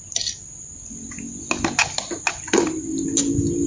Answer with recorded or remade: recorded